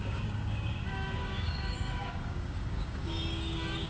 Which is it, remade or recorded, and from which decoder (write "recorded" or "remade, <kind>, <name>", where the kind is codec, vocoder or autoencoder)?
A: remade, codec, DAC